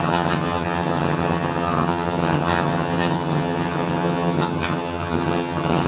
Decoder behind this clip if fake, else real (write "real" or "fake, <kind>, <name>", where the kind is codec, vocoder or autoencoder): fake, vocoder, HiFi-GAN